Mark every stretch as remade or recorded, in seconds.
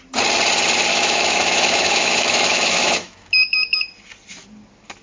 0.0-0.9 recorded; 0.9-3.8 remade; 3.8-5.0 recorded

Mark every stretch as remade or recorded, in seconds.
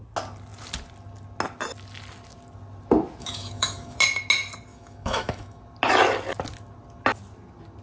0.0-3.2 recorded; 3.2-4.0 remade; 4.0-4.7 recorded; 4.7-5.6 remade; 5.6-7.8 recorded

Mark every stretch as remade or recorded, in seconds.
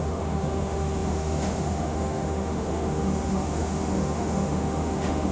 0.0-5.3 remade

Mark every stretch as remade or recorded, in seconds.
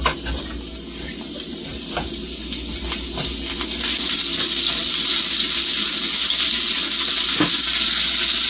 0.0-8.5 recorded